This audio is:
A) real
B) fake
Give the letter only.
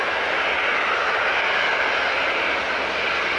A